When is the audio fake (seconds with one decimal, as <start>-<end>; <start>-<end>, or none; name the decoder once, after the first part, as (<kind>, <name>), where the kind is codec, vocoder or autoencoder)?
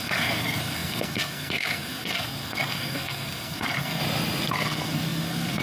0.0-4.0 (codec, SNAC); 4.5-5.6